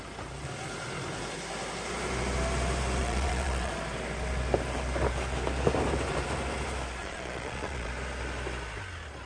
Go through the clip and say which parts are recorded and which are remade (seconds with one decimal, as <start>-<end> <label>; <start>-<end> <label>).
0.0-3.0 recorded; 3.0-3.7 remade; 3.7-7.0 recorded; 7.0-7.9 remade; 7.9-9.3 recorded